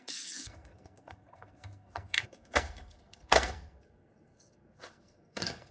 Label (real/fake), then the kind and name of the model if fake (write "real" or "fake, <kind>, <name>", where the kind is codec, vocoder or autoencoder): fake, codec, SNAC